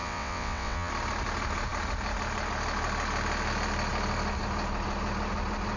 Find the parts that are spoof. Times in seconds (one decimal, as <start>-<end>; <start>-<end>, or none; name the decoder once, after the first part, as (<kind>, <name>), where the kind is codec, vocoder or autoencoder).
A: 0.0-0.9 (vocoder, WaveNeXt)